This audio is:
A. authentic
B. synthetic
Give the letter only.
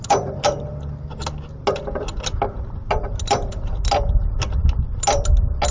A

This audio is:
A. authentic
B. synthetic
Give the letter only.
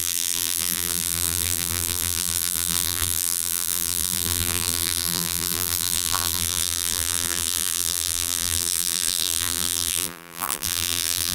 B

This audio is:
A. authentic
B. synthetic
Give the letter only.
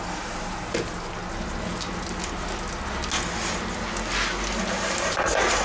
A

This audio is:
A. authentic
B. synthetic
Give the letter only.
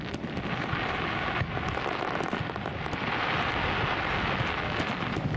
A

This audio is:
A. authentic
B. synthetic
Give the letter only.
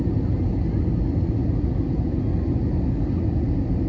A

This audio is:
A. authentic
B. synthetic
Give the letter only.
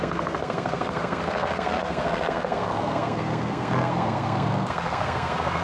B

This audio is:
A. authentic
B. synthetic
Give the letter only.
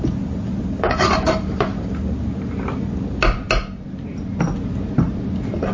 A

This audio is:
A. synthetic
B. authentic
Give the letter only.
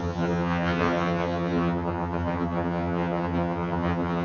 A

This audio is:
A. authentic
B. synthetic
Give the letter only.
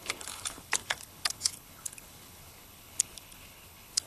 B